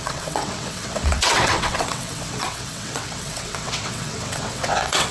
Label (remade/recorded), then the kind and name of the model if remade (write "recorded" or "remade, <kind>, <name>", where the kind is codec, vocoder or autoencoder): remade, vocoder, WaveNeXt